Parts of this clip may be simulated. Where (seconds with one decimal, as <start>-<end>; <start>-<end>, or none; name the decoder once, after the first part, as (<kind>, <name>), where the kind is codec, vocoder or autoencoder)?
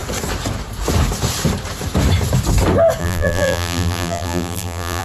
3.0-5.0 (vocoder, BigVGAN v2)